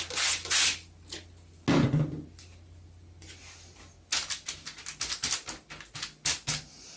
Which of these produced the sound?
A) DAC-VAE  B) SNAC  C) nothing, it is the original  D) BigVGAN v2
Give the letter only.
C